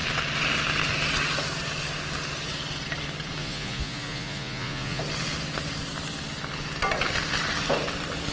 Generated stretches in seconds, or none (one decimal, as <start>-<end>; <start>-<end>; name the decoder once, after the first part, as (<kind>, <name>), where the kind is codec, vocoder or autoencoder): 3.4-5.0 (vocoder, Vocos)